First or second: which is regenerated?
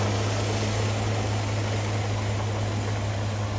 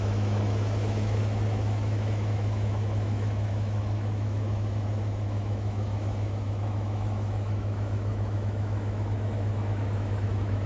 second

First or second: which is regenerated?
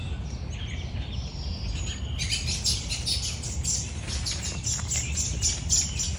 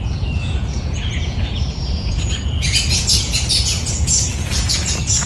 second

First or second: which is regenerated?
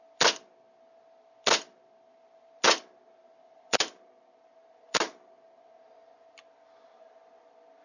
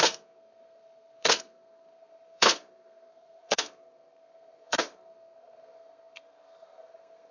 second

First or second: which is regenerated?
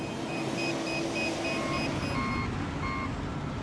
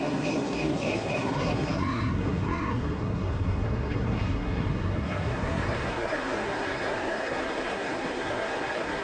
second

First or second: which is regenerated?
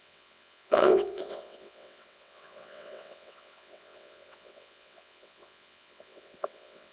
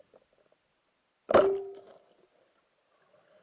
first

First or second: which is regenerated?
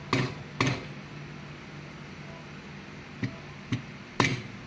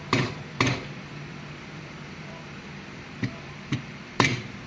second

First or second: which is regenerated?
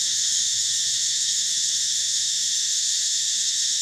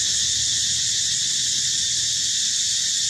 first